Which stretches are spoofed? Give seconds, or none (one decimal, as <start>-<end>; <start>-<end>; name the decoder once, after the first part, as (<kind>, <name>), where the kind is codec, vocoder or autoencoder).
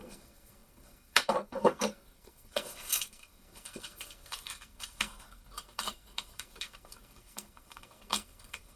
0.0-8.8 (codec, SNAC)